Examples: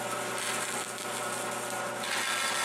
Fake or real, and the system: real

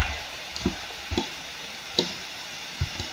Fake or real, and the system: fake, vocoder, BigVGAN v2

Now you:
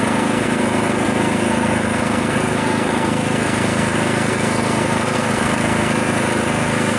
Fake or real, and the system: fake, codec, SNAC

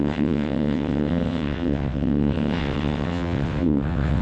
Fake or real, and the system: fake, vocoder, WaveNeXt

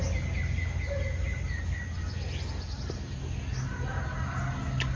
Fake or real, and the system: real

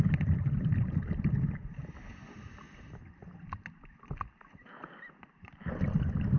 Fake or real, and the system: real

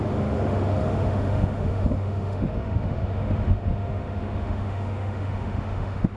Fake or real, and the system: fake, autoencoder, DAC-VAE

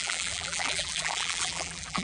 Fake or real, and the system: fake, vocoder, BigVGAN v2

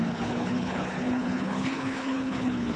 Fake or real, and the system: fake, codec, HILCodec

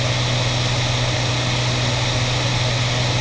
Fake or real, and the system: real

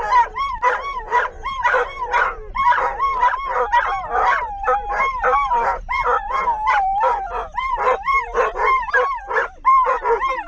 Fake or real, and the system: fake, vocoder, BigVGAN v2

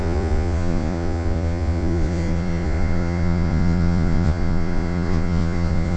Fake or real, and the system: fake, vocoder, Vocos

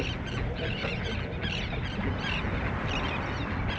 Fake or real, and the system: real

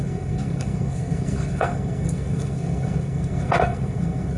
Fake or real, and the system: fake, codec, SNAC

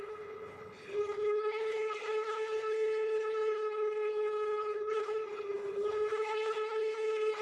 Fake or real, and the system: fake, codec, HILCodec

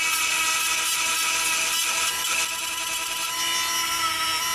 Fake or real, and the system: real